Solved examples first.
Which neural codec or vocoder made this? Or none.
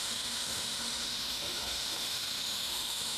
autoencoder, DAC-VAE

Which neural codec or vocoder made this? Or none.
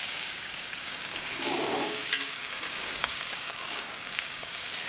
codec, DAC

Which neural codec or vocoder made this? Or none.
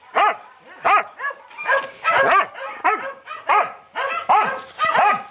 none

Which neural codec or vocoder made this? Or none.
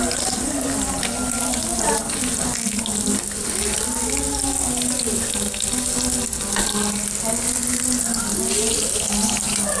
none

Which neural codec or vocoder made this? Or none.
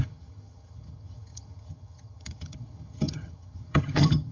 vocoder, HiFi-GAN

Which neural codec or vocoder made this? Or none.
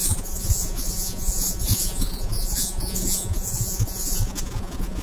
vocoder, Vocos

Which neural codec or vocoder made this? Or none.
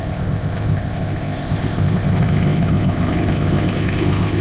codec, ZipCodec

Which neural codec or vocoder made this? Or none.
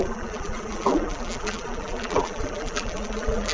vocoder, BigVGAN v2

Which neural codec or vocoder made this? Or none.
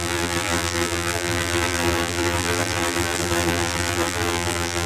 vocoder, BigVGAN v2